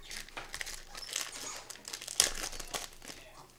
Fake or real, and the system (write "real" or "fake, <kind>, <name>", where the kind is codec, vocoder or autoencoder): real